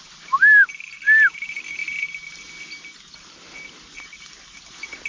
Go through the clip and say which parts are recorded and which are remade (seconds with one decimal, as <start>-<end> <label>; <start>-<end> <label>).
0.0-5.1 recorded